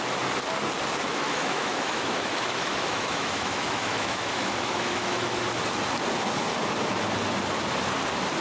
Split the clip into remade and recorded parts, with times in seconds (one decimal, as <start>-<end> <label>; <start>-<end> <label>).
0.0-1.1 recorded; 1.1-5.4 remade; 5.4-8.4 recorded

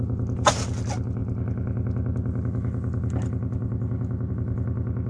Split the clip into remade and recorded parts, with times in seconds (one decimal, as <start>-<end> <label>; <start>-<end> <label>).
0.0-5.1 recorded

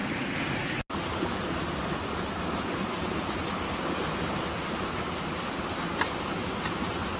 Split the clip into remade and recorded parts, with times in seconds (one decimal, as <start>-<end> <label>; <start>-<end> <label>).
0.0-7.2 recorded